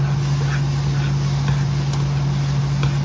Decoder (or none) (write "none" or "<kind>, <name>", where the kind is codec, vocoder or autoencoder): none